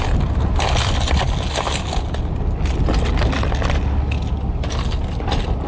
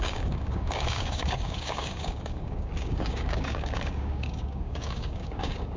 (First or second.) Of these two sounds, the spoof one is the second